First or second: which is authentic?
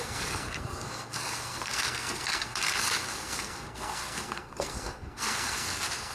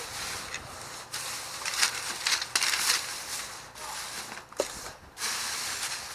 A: second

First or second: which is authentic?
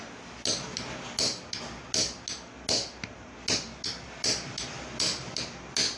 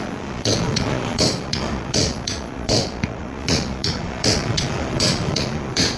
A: first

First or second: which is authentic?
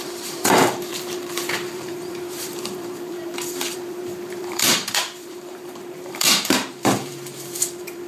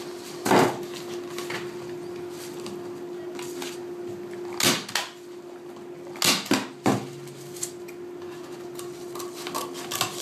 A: second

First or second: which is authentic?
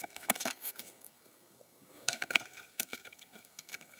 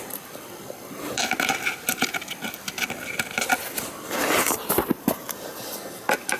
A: second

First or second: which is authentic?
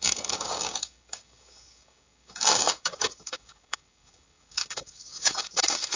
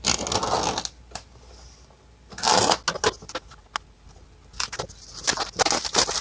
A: second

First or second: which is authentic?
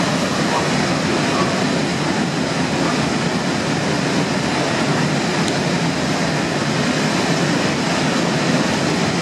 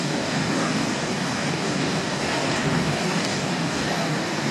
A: first